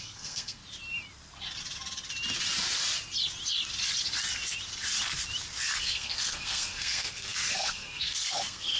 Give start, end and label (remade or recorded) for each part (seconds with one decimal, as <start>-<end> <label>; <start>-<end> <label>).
0.0-0.6 remade; 0.6-5.8 recorded; 5.8-8.8 remade